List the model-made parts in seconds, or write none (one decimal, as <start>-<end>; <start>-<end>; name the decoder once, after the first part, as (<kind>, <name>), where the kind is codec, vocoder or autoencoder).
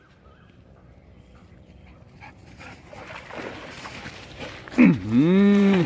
2.4-5.9 (vocoder, BigVGAN v2)